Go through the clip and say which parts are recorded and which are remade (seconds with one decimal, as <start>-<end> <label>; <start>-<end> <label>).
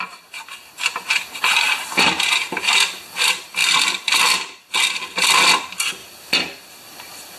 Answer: 0.0-3.6 recorded; 3.6-5.3 remade; 5.3-6.0 recorded; 6.0-7.4 remade